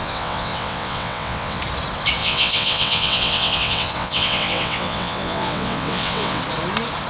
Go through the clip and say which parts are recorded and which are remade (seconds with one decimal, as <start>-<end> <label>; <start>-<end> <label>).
0.0-1.6 remade; 1.6-2.2 recorded; 2.2-6.4 remade; 6.4-7.1 recorded